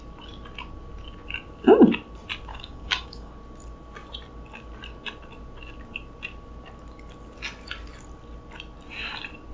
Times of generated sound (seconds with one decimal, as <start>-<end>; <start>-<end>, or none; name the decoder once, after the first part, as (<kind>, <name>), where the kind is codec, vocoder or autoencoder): 2.5-3.3 (codec, DAC)